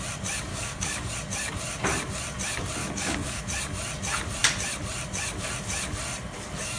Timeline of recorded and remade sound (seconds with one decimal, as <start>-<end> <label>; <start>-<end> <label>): 0.0-0.5 recorded; 0.5-1.1 remade; 1.1-2.8 recorded; 2.8-3.4 remade; 3.4-6.8 recorded